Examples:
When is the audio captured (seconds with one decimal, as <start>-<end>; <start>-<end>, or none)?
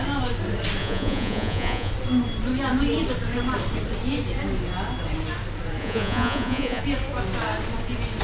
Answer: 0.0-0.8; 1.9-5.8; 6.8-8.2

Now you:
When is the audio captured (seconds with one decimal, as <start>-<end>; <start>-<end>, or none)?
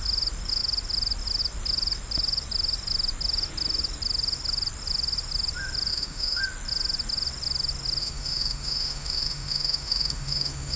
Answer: 0.0-5.9; 6.4-8.0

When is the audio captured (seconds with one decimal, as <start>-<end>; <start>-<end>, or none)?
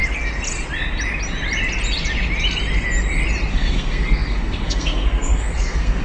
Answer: 0.0-3.5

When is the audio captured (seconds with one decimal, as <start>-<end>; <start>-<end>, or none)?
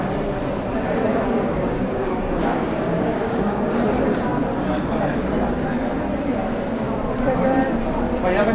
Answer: 0.0-1.1; 3.8-8.5